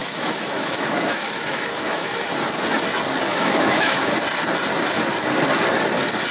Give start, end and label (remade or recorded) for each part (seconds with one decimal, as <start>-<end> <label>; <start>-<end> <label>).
0.0-2.3 remade; 2.3-3.3 recorded; 3.3-4.1 remade; 4.1-6.3 recorded

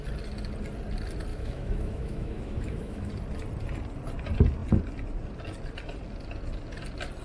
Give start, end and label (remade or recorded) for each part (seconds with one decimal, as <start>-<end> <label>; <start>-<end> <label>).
0.0-1.3 recorded; 1.3-3.1 remade; 3.1-7.2 recorded

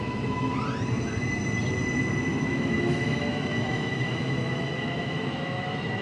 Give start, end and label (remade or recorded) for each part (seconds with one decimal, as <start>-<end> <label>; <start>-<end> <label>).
0.0-0.5 remade; 0.5-2.4 recorded; 2.4-6.0 remade

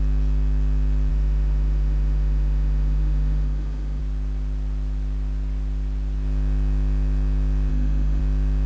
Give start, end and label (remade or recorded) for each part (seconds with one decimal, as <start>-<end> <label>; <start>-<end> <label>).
0.0-1.1 recorded; 1.1-4.0 remade; 4.0-7.7 recorded; 7.7-8.2 remade; 8.2-8.7 recorded

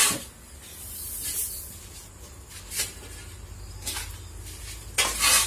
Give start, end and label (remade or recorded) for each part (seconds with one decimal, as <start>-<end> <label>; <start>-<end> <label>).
0.0-5.5 recorded

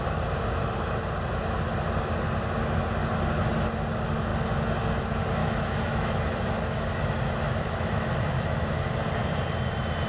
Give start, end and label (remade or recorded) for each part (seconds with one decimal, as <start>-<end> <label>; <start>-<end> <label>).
0.0-5.4 recorded; 5.4-8.9 remade; 8.9-10.1 recorded

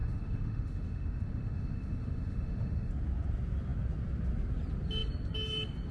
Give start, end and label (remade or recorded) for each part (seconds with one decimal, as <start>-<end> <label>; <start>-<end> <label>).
0.0-2.9 remade; 2.9-5.9 recorded

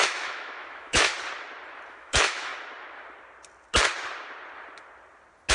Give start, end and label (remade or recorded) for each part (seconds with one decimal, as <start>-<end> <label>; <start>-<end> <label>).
0.0-1.1 remade; 1.1-1.9 recorded; 1.9-2.5 remade; 2.5-5.5 recorded